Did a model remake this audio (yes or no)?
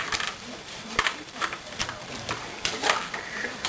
yes